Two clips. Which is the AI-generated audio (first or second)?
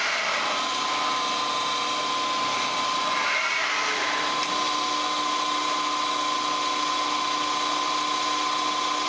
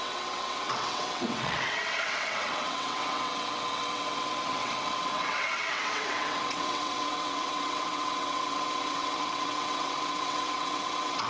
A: second